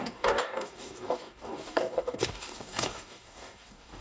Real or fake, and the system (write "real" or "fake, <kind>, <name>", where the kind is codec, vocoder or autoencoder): fake, codec, DAC